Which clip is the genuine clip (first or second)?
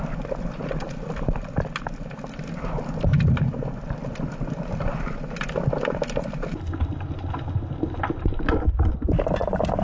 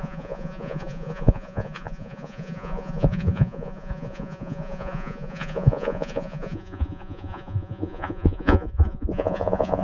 first